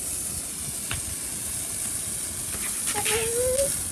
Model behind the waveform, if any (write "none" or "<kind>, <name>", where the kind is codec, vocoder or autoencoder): none